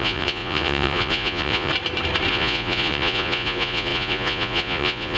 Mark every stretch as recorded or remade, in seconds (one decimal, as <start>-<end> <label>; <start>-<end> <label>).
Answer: 0.0-1.7 remade; 1.7-2.3 recorded; 2.3-5.2 remade